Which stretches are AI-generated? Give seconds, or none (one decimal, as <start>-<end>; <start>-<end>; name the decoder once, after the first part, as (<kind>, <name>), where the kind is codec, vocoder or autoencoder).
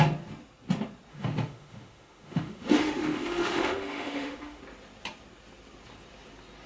1.1-4.6 (autoencoder, DAC-VAE)